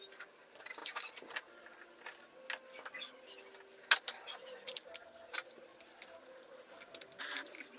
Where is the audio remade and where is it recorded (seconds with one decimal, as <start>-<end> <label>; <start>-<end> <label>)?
0.0-7.8 recorded